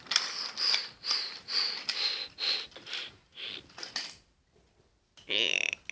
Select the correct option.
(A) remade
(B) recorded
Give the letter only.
B